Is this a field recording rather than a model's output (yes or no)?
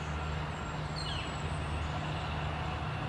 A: yes